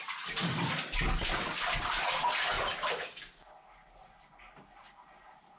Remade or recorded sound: recorded